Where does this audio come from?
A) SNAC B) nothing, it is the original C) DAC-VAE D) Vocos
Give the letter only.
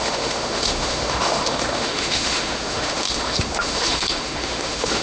C